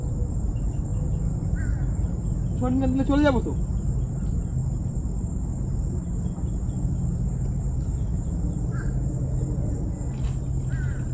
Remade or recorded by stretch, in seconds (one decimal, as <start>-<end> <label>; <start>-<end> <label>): 0.0-11.1 recorded

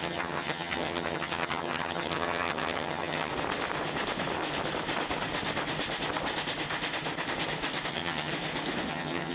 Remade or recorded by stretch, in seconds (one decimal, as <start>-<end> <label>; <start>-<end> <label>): 0.0-3.3 remade; 3.3-7.9 recorded; 7.9-8.3 remade; 8.3-8.9 recorded; 8.9-9.3 remade

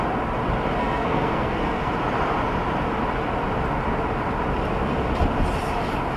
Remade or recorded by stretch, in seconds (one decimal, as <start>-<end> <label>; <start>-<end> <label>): 0.0-0.8 recorded; 0.8-1.9 remade; 1.9-6.2 recorded

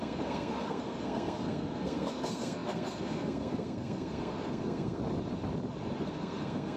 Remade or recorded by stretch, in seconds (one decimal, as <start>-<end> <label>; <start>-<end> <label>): 0.0-5.0 remade; 5.0-6.0 recorded; 6.0-6.8 remade

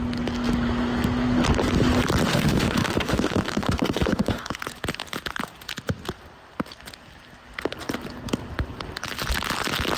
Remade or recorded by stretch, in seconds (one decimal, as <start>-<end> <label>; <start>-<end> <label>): 0.0-2.3 recorded; 2.3-4.6 remade; 4.6-10.0 recorded

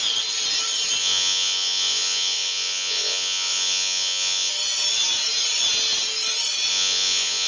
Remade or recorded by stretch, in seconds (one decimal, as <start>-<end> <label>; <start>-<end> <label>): 0.0-1.0 recorded; 1.0-4.5 remade; 4.5-6.7 recorded; 6.7-7.5 remade

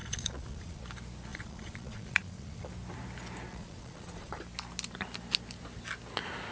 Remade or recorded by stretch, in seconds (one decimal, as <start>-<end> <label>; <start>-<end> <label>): 0.0-0.8 remade; 0.8-1.3 recorded; 1.3-2.7 remade; 2.7-3.5 recorded; 3.5-4.4 remade; 4.4-6.5 recorded

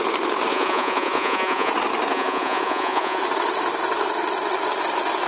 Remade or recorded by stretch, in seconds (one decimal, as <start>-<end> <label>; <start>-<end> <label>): 0.0-0.5 recorded; 0.5-1.7 remade; 1.7-2.1 recorded; 2.1-3.2 remade; 3.2-5.3 recorded